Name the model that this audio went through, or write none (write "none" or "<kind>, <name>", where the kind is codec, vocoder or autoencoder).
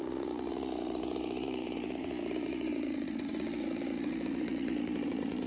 vocoder, Vocos